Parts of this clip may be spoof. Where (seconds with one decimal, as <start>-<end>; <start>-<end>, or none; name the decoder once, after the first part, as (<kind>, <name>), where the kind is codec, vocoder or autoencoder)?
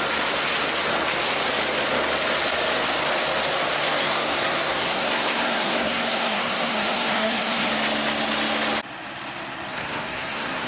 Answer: 4.0-7.7 (codec, SNAC); 9.7-10.7